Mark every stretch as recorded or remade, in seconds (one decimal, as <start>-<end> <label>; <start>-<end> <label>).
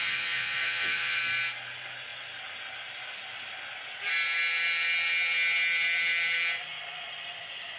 0.0-1.2 remade; 1.2-7.8 recorded